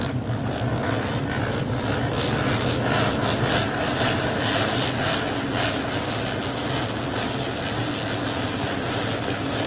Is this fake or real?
real